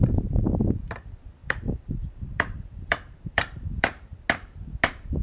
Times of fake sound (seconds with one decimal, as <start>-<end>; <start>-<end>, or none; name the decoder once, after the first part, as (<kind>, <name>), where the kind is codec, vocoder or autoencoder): 1.4-4.2 (vocoder, BigVGAN v2)

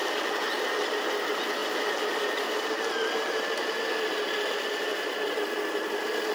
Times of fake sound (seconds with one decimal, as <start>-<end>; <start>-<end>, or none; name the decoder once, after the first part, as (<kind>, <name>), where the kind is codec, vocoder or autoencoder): 0.0-0.5 (vocoder, BigVGAN v2); 4.9-6.3

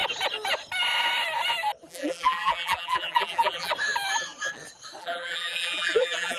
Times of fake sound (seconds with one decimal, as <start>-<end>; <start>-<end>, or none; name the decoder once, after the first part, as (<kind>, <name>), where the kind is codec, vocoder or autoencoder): 1.9-3.7 (vocoder, BigVGAN v2); 5.0-6.4